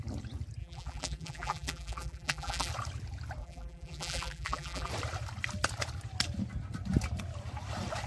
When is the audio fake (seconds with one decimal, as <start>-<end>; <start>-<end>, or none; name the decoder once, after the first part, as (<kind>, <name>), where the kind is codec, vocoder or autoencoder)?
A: 0.6-2.7 (vocoder, BigVGAN v2); 3.4-4.9